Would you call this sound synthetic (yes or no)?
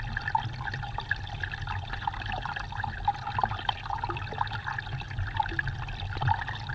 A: no